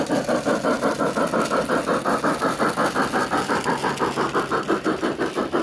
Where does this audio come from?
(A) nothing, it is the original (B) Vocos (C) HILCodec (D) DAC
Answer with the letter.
A